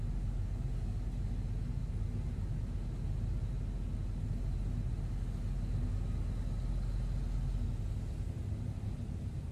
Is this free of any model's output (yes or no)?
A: yes